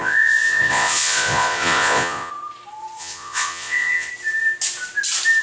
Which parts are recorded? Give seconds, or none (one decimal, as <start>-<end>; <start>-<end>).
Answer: 2.3-3.0; 4.1-5.4